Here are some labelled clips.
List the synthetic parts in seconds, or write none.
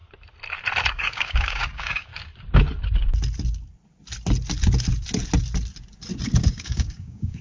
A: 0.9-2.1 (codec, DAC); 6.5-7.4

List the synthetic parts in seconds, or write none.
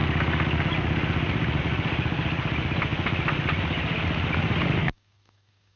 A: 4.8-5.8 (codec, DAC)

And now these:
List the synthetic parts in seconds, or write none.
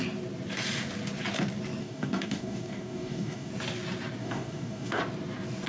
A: 1.8-3.5 (codec, DAC); 4.2-5.0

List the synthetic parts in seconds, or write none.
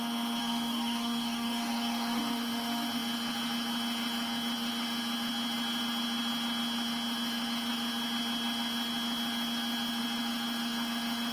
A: 0.4-2.2 (codec, DAC)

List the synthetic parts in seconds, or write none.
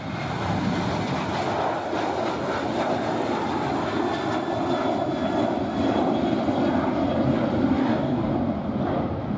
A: 7.8-8.3 (codec, DAC)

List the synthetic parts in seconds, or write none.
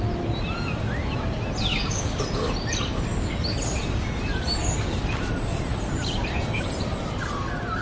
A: 1.7-2.2 (codec, DAC)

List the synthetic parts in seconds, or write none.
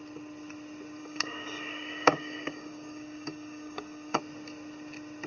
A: 1.0-4.2 (codec, DAC)